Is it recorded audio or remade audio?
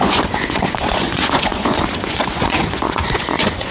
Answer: remade